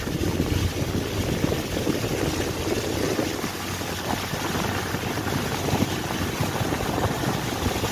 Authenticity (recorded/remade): recorded